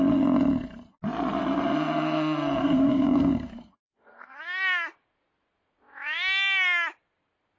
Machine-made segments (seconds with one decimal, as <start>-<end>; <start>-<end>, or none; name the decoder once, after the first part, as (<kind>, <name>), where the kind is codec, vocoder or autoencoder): 2.6-4.4 (codec, SNAC)

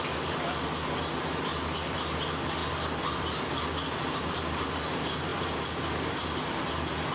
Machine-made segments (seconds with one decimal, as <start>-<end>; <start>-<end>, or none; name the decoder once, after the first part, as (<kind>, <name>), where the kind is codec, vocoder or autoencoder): 2.6-4.6 (vocoder, BigVGAN v2); 5.3-7.1

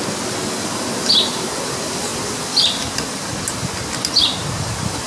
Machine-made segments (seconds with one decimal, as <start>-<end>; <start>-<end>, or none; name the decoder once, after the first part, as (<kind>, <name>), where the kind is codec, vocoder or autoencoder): none

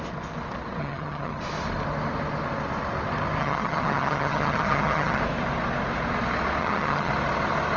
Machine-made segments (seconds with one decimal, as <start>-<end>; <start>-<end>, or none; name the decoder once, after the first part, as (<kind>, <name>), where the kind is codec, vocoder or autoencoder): 0.8-1.4 (vocoder, HiFi-GAN); 3.4-5.2; 6.6-7.1

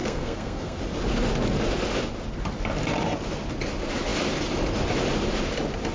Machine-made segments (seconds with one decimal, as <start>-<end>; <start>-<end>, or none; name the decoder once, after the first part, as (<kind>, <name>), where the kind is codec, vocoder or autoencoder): 0.0-0.8 (codec, SNAC)

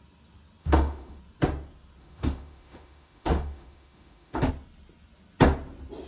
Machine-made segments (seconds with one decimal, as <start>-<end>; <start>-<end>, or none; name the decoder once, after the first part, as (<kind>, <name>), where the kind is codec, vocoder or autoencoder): 0.6-1.2 (autoencoder, DAC-VAE); 2.0-4.5